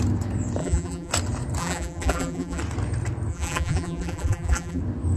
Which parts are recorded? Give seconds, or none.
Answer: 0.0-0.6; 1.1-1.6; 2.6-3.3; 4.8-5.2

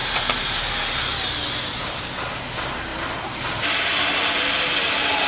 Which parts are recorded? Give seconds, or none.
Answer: 0.7-2.9; 3.8-5.3

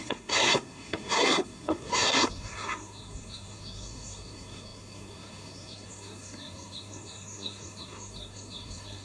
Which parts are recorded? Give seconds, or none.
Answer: none

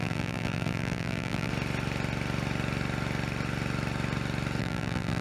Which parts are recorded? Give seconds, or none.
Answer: 1.5-4.6

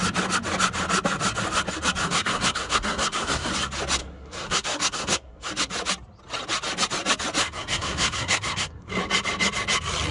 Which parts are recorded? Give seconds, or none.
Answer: 0.0-2.0; 3.5-4.0; 5.5-7.4; 8.9-10.1